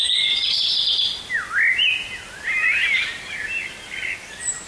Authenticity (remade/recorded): recorded